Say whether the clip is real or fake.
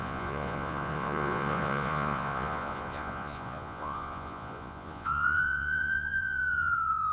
fake